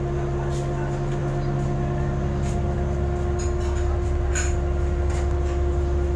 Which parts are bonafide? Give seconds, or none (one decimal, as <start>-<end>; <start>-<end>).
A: 0.0-6.2